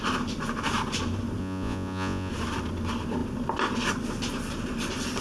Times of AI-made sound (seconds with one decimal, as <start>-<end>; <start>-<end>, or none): 1.4-2.3